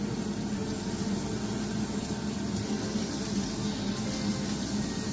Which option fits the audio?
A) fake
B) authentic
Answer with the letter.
B